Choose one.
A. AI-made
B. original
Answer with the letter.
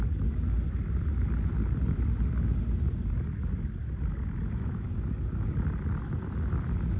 B